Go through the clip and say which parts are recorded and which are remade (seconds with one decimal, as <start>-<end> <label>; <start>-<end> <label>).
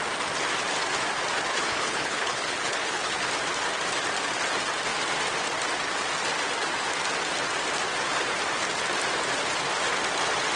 0.0-1.5 recorded; 1.5-3.3 remade; 3.3-10.6 recorded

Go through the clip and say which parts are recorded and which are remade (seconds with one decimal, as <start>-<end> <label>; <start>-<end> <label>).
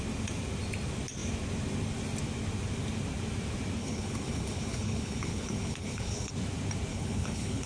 0.0-3.8 recorded; 3.8-6.3 remade; 6.3-6.9 recorded; 6.9-7.7 remade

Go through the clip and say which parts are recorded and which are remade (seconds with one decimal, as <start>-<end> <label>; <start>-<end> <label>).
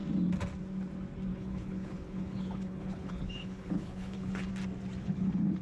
0.0-1.3 recorded; 1.3-4.5 remade; 4.5-5.0 recorded; 5.0-5.6 remade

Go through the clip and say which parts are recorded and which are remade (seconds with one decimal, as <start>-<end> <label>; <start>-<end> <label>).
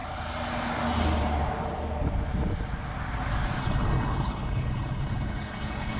0.0-3.6 recorded; 3.6-6.0 remade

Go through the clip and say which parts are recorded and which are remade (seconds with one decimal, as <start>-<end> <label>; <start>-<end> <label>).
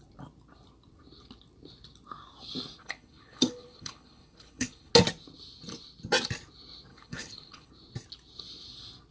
0.0-2.8 recorded; 2.8-4.9 remade; 4.9-6.9 recorded; 6.9-7.7 remade; 7.7-9.1 recorded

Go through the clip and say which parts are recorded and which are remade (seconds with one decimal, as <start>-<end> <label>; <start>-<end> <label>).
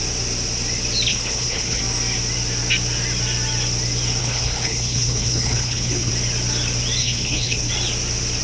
0.0-1.1 recorded; 1.1-1.8 remade; 1.8-4.2 recorded; 4.2-6.1 remade; 6.1-7.0 recorded; 7.0-7.7 remade; 7.7-8.4 recorded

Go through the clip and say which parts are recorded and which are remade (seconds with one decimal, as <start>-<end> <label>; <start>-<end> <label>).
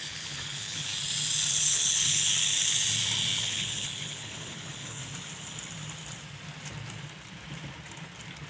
0.0-0.9 remade; 0.9-1.5 recorded; 1.5-2.3 remade; 2.3-3.4 recorded; 3.4-5.0 remade; 5.0-8.5 recorded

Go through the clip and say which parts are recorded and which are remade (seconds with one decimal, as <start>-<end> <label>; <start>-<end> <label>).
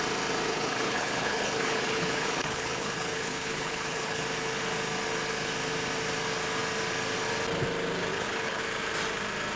0.0-0.5 recorded; 0.5-4.2 remade; 4.2-8.1 recorded; 8.1-8.6 remade; 8.6-9.6 recorded